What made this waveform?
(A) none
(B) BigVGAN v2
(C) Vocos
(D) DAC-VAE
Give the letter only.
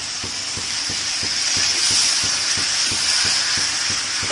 A